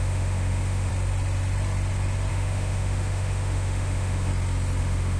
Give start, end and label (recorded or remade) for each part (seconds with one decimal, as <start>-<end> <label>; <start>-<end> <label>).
0.0-0.9 remade; 0.9-2.3 recorded; 2.3-4.3 remade; 4.3-4.8 recorded; 4.8-5.2 remade